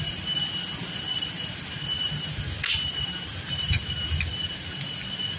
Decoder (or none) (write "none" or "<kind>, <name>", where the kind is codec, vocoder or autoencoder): none